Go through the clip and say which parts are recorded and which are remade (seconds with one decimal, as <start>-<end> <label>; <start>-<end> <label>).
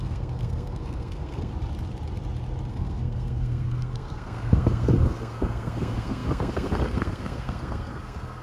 0.0-1.5 remade; 1.5-2.7 recorded; 2.7-8.4 remade